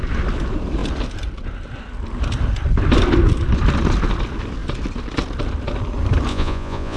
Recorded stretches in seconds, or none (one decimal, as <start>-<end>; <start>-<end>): 0.0-6.3